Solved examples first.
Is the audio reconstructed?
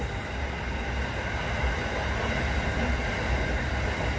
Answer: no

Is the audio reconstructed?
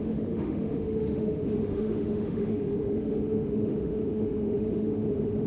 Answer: yes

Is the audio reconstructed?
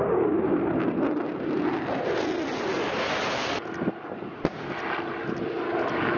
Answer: no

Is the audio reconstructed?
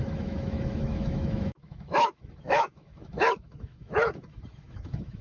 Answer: yes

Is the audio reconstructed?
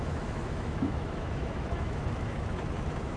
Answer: yes